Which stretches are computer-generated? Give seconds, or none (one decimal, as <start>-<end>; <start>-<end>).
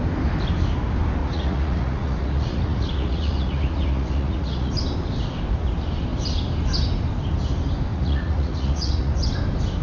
1.2-4.7; 7.9-9.1